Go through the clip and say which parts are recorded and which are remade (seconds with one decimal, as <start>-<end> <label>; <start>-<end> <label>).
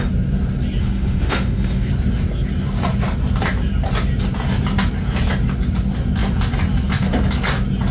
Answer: 0.0-0.8 recorded; 0.8-1.9 remade; 1.9-7.9 recorded